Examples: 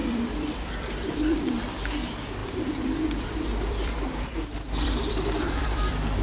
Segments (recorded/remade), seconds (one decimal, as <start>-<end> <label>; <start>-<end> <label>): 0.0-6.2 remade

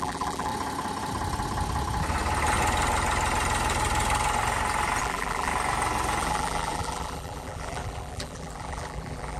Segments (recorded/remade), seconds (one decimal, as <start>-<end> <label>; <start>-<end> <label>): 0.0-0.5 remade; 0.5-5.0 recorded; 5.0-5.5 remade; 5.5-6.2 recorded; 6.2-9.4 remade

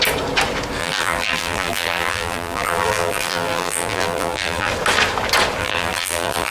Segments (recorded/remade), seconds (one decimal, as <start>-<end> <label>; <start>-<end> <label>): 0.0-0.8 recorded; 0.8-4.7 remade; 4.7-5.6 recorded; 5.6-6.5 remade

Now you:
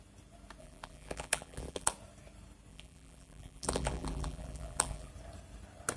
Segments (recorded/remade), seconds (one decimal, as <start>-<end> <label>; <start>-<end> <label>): 0.0-0.6 recorded; 0.6-1.9 remade; 1.9-2.7 recorded; 2.7-5.1 remade; 5.1-6.0 recorded

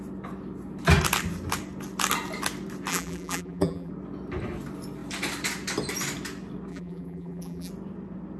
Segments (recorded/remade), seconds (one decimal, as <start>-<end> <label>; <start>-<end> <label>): 0.0-2.9 recorded; 2.9-3.9 remade; 3.9-6.7 recorded; 6.7-7.7 remade; 7.7-8.4 recorded